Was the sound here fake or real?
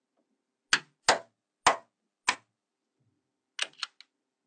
real